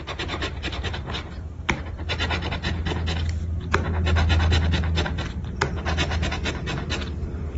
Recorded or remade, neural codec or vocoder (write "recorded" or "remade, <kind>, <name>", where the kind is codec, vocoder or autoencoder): recorded